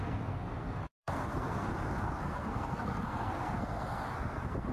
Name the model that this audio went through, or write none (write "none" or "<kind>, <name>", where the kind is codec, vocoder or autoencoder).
codec, SNAC